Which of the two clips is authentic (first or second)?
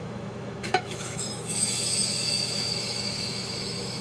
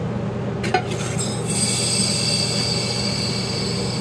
second